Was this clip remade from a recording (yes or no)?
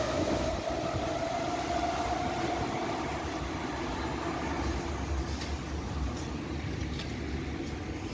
no